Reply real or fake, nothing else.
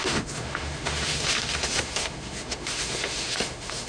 fake